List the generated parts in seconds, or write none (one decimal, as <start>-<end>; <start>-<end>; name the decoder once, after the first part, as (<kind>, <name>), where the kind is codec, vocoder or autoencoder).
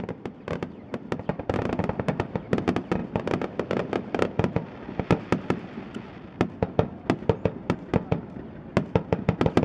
none